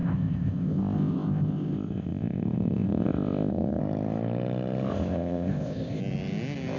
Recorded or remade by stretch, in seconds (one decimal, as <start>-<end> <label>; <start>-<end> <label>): 0.0-3.8 remade; 3.8-4.9 recorded; 4.9-6.0 remade; 6.0-6.8 recorded